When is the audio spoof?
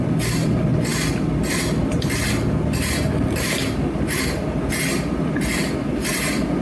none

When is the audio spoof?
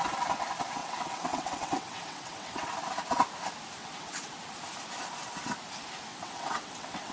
0.8-2.7 (vocoder, WaveNeXt); 3.8-4.3; 6.1-7.1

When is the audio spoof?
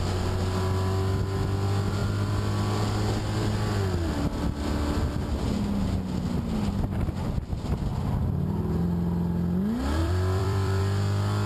10.0-10.8 (vocoder, BigVGAN v2)